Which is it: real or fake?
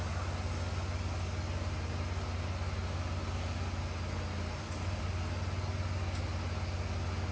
real